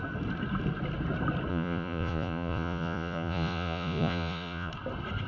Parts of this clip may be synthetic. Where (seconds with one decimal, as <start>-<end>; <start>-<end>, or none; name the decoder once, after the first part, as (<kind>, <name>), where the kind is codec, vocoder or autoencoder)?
1.5-4.7 (vocoder, Vocos)